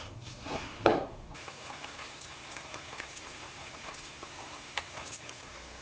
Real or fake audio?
fake